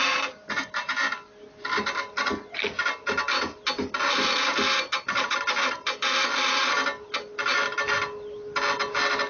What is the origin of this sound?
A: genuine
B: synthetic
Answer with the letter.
A